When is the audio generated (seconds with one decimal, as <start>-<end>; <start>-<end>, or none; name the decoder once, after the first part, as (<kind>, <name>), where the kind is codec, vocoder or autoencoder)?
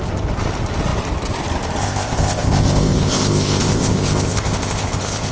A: 1.8-5.3 (codec, ZipCodec)